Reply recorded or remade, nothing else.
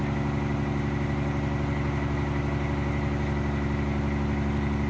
recorded